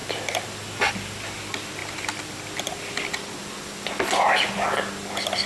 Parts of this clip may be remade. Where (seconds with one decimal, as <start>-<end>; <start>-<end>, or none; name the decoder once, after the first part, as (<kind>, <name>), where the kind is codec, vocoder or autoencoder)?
none